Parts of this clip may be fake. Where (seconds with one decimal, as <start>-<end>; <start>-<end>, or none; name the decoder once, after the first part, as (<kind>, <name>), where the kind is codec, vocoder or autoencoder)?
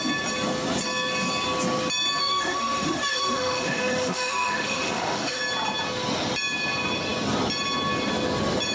2.2-5.4 (autoencoder, DAC-VAE)